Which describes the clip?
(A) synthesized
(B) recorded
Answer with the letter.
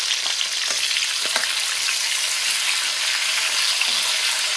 B